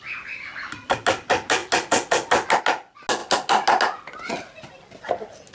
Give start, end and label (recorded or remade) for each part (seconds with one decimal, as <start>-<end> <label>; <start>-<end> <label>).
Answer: 0.0-5.5 recorded